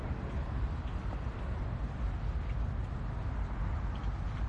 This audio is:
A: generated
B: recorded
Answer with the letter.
B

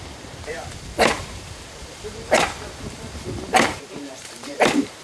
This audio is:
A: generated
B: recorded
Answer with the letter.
A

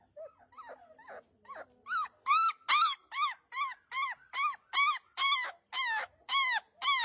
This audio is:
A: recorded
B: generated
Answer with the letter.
A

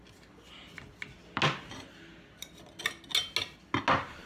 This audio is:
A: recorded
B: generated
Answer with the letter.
A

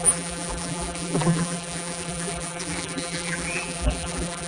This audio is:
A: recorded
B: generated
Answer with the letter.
B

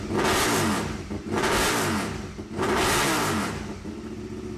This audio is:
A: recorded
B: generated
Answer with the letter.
A